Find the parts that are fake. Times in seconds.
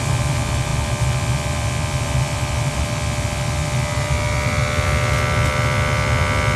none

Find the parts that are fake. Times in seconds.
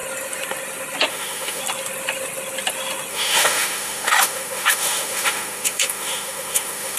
1.1-1.6 (autoencoder, DAC-VAE); 3.1-7.0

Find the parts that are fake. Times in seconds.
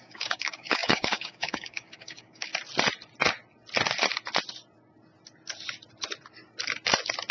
0.0-2.5 (codec, DAC)